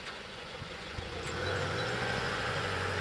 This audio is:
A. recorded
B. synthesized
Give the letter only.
B